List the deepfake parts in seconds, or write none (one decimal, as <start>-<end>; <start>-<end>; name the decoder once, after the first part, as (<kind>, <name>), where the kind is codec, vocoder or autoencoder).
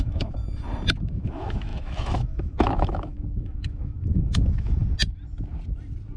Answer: 0.0-0.4 (autoencoder, DAC-VAE); 1.0-4.8